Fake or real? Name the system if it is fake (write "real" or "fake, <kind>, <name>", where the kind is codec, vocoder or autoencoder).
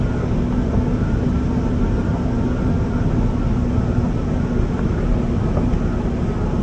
real